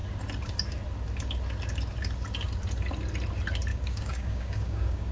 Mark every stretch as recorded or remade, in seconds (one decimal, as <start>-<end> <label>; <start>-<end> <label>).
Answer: 0.0-3.7 recorded; 3.7-5.1 remade